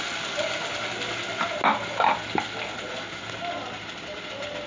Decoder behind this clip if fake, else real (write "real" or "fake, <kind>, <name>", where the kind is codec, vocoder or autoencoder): real